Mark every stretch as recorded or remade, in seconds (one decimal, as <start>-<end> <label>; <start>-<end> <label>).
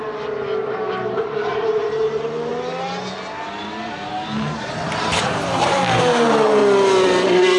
0.0-0.6 recorded; 0.6-2.5 remade; 2.5-4.6 recorded; 4.6-6.6 remade; 6.6-7.6 recorded